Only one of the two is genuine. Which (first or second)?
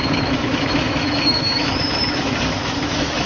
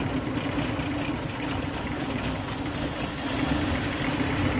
second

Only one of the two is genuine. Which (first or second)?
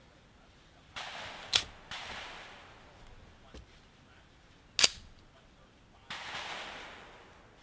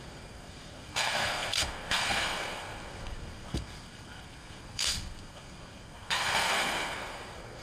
first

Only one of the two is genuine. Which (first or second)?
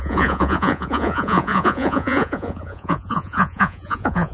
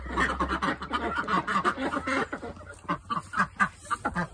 second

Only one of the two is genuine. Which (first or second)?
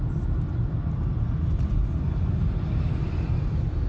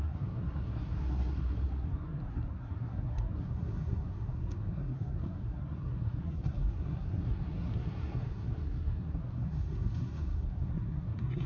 first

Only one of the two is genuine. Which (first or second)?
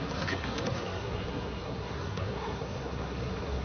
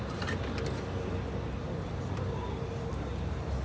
second